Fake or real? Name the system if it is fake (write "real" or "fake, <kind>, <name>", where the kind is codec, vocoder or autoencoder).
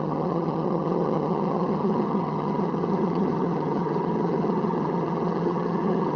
fake, vocoder, HiFi-GAN